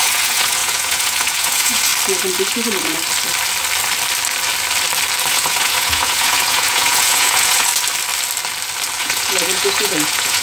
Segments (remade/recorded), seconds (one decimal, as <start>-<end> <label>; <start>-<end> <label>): 0.0-1.9 remade; 1.9-5.3 recorded; 5.3-7.7 remade; 7.7-9.0 recorded; 9.0-10.4 remade